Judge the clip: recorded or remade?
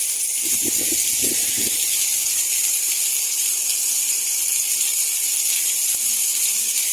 recorded